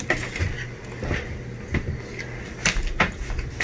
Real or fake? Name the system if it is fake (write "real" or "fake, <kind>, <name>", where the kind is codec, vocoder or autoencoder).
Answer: real